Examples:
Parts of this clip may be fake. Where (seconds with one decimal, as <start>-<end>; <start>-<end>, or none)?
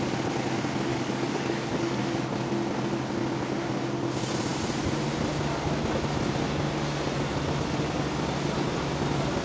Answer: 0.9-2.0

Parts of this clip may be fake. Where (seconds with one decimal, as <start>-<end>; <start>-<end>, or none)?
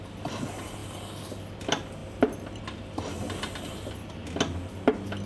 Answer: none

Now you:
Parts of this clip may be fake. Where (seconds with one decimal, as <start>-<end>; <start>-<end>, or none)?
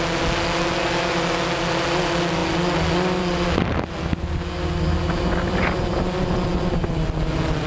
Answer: none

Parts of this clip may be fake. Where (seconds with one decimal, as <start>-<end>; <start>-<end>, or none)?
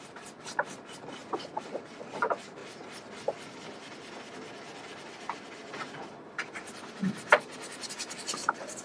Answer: 0.0-1.2; 2.0-2.6; 7.9-8.8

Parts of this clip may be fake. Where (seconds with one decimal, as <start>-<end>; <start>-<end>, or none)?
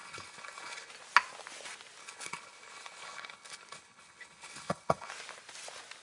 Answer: 0.0-0.9; 2.0-5.1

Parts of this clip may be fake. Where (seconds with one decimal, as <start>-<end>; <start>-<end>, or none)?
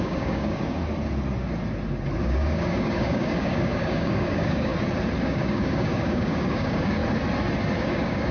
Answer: 0.0-0.8; 2.2-4.7; 5.2-7.0; 7.8-8.3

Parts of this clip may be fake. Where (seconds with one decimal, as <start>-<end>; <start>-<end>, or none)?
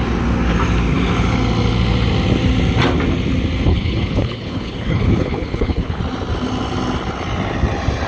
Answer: 3.7-6.0